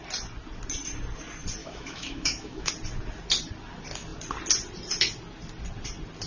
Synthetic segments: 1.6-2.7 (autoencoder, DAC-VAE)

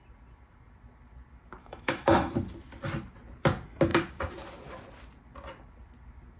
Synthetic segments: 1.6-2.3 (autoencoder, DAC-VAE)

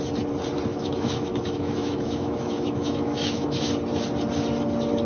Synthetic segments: 0.7-3.7 (autoencoder, DAC-VAE)